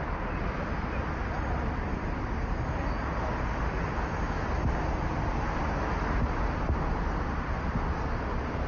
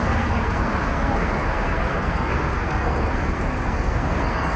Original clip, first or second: first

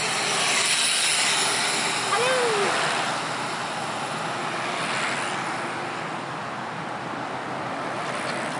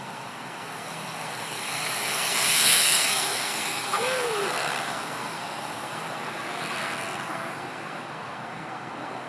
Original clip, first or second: first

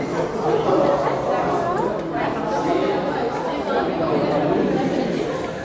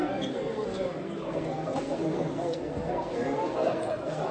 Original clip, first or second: first